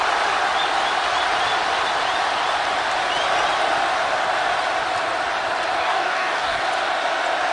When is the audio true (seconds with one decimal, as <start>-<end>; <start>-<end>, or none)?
0.0-5.8; 6.6-7.5